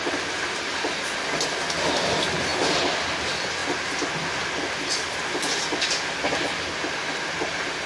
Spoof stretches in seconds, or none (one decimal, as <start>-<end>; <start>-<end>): none